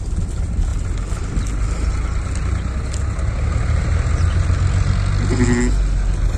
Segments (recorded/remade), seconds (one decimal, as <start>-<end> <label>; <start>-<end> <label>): 0.0-6.4 recorded